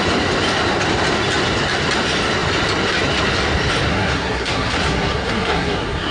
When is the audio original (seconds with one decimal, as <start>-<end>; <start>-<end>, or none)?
0.0-3.9